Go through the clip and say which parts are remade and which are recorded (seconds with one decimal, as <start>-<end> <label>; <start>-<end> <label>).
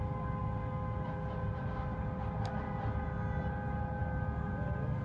0.0-5.0 recorded